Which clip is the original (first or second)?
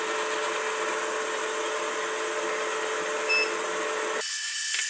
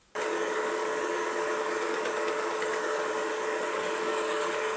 first